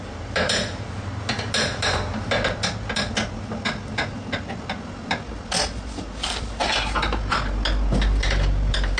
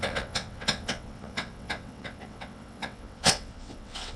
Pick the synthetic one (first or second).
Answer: second